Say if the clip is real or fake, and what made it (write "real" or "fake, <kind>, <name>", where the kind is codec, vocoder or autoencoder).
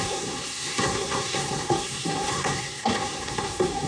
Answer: fake, codec, SNAC